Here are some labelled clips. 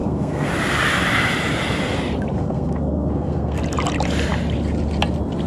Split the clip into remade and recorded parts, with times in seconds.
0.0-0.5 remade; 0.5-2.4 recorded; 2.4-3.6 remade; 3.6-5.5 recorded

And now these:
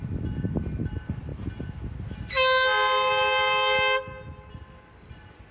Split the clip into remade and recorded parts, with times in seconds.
0.0-5.5 recorded

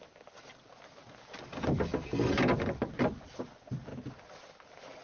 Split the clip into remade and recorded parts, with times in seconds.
0.0-5.0 recorded